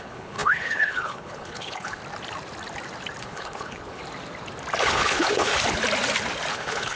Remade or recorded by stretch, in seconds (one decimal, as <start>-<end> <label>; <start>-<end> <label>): 0.0-2.0 remade; 2.0-3.2 recorded; 3.2-4.0 remade; 4.0-4.8 recorded; 4.8-5.5 remade; 5.5-6.5 recorded; 6.5-7.0 remade